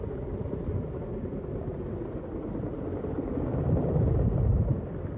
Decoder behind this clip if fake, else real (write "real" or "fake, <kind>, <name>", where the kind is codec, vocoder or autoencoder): real